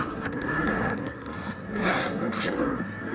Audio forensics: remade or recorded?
remade